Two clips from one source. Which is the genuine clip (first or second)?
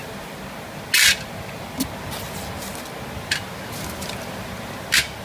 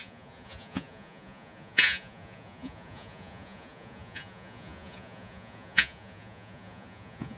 first